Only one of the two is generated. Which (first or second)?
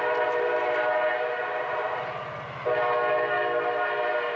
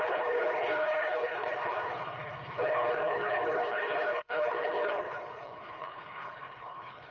second